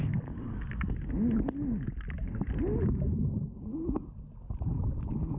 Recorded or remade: recorded